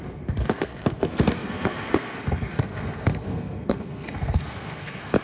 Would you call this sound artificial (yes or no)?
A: yes